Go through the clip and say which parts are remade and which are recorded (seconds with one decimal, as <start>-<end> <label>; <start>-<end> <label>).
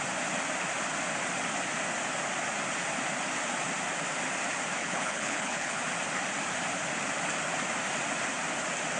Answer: 0.0-4.8 recorded; 4.8-5.8 remade; 5.8-9.0 recorded